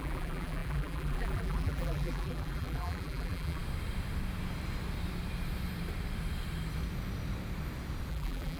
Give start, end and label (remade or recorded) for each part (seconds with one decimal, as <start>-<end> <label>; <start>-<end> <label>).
0.0-3.6 remade; 3.6-8.1 recorded; 8.1-8.6 remade